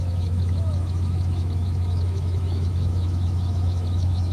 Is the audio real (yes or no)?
no